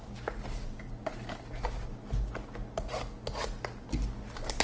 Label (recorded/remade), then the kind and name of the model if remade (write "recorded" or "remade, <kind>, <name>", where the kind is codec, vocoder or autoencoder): recorded